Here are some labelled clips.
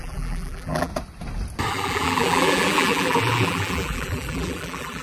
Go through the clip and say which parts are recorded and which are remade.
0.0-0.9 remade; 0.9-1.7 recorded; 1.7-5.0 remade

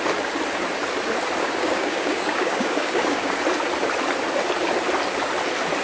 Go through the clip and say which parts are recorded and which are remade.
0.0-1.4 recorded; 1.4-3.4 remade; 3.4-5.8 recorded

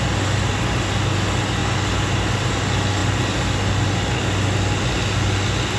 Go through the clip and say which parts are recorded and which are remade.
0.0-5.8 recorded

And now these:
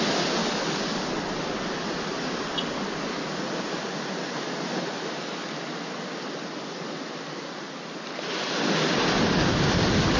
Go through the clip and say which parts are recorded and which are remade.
0.0-0.4 recorded; 0.4-1.0 remade; 1.0-10.2 recorded

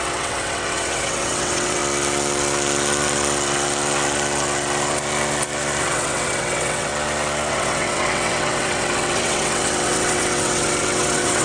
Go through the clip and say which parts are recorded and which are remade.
0.0-1.8 remade; 1.8-5.8 recorded; 5.8-6.9 remade; 6.9-7.5 recorded; 7.5-11.4 remade